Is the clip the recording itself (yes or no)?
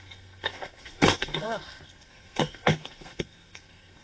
no